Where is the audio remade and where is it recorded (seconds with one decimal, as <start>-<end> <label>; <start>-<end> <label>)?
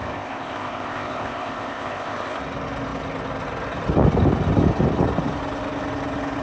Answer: 0.0-2.4 remade; 2.4-6.4 recorded